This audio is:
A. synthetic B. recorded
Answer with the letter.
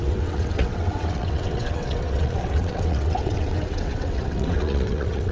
A